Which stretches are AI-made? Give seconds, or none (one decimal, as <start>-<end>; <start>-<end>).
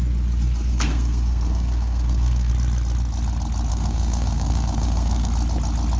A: 0.7-2.5; 3.7-5.3